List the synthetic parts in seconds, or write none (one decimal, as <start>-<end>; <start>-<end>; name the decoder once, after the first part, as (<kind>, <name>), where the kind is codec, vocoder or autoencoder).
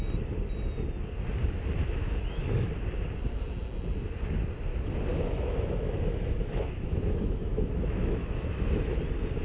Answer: 1.8-2.7 (autoencoder, DAC-VAE); 5.1-9.0